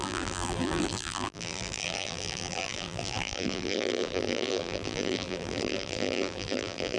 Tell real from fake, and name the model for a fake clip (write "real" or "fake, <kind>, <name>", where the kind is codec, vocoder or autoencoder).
fake, vocoder, BigVGAN v2